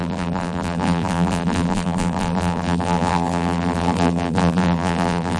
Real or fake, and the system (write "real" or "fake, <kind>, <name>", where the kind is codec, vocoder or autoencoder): fake, vocoder, BigVGAN v2